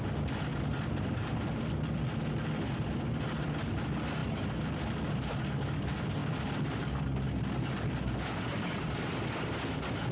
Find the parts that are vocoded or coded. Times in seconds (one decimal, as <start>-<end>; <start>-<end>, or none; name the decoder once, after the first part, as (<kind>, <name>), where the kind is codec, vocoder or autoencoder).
none